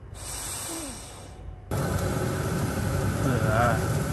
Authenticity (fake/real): fake